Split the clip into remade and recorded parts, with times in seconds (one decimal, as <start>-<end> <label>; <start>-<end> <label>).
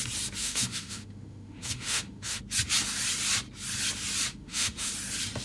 0.0-0.4 recorded; 0.4-2.4 remade; 2.4-4.3 recorded; 4.3-4.9 remade; 4.9-5.4 recorded